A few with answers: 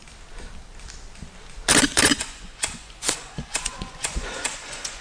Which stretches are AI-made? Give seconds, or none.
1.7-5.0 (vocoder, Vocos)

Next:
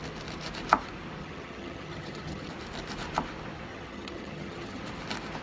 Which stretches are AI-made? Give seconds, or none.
1.2-2.5 (vocoder, HiFi-GAN); 3.7-4.8

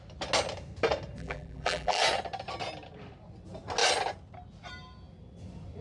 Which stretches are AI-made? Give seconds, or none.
1.2-2.0 (vocoder, BigVGAN v2)

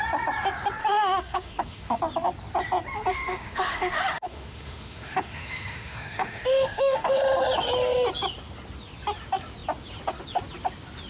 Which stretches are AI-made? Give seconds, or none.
0.8-2.0 (autoencoder, DAC-VAE); 3.1-7.2